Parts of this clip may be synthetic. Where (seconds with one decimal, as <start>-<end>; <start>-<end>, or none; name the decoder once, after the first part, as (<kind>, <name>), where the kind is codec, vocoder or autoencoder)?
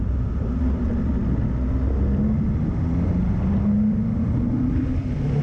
none